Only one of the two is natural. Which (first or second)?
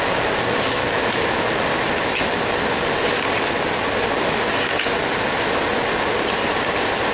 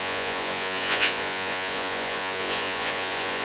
first